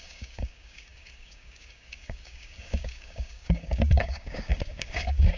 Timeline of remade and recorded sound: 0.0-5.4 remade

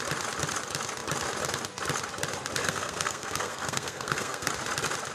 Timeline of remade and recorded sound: 0.0-2.6 recorded; 2.6-4.5 remade; 4.5-5.1 recorded

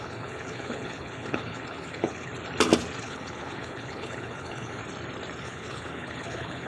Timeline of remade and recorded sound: 0.0-2.3 remade; 2.3-3.0 recorded; 3.0-4.8 remade; 4.8-5.4 recorded; 5.4-6.7 remade

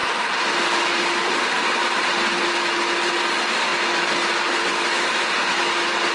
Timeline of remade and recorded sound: 0.0-6.1 recorded